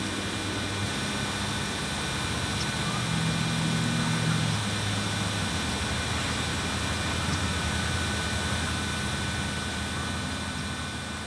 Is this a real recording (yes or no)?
yes